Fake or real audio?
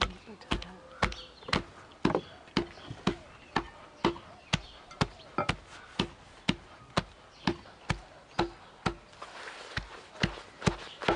real